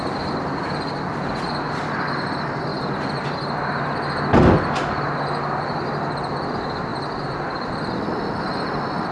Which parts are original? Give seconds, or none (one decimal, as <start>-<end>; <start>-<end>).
0.0-9.1